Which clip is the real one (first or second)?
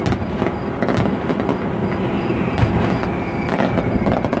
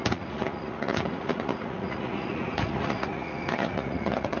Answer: first